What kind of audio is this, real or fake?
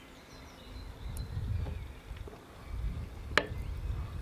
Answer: real